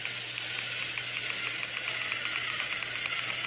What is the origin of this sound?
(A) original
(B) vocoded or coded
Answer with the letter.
A